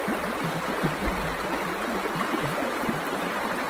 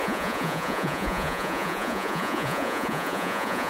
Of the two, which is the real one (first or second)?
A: first